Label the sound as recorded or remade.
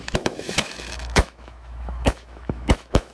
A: remade